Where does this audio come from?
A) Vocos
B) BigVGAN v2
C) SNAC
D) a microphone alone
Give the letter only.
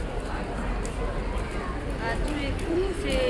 B